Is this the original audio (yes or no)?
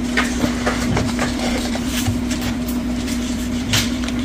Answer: no